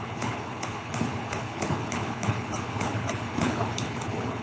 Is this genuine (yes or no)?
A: no